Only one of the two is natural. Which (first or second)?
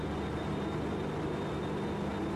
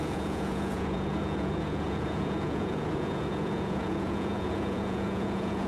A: first